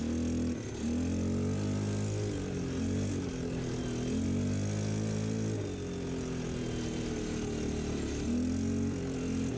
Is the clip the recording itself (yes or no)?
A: yes